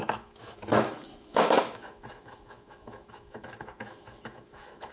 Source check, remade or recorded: remade